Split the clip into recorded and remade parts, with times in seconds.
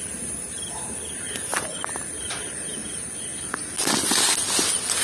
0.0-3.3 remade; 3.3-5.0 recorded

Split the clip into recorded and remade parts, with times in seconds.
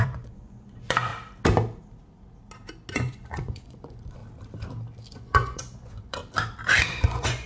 0.0-1.1 remade; 1.1-2.9 recorded; 2.9-4.2 remade; 4.2-5.1 recorded; 5.1-6.2 remade; 6.2-6.9 recorded; 6.9-7.5 remade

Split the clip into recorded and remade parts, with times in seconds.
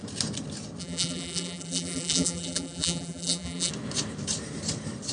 0.0-0.8 recorded; 0.8-3.7 remade; 3.7-5.1 recorded